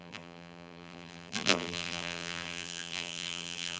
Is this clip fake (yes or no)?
yes